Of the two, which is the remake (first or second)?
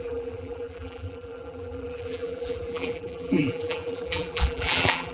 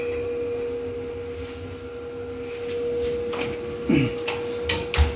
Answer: first